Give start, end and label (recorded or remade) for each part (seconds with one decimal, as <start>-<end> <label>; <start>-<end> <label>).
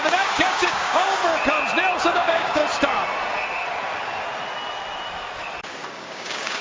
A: 0.0-1.2 remade; 1.2-2.0 recorded; 2.0-2.6 remade; 2.6-5.9 recorded; 5.9-6.6 remade